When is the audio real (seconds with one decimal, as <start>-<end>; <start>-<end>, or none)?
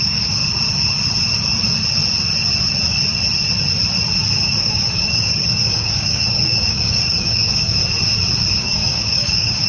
0.4-4.6; 7.8-8.5